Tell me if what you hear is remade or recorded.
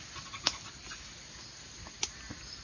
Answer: recorded